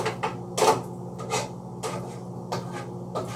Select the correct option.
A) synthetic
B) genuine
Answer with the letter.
B